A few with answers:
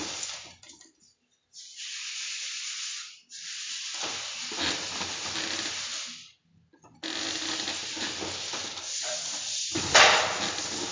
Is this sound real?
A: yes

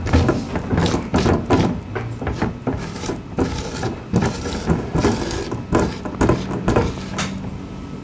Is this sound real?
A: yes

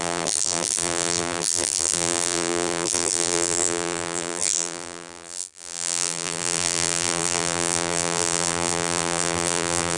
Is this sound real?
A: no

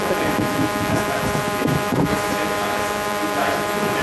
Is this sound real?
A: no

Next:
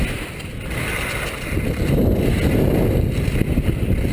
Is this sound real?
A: yes